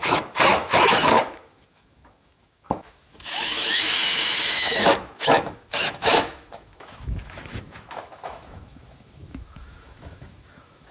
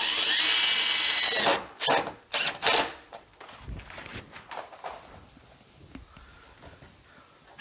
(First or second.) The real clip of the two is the second